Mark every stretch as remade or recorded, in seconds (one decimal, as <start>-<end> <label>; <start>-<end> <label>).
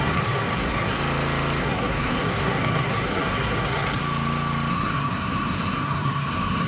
0.0-1.0 remade; 1.0-1.6 recorded; 1.6-4.0 remade; 4.0-4.7 recorded; 4.7-6.7 remade